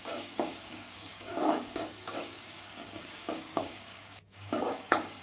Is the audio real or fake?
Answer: fake